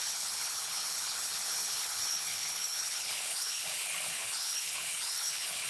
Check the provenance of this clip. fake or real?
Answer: fake